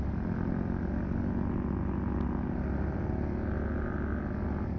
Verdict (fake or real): real